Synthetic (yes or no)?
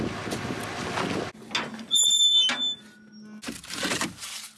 no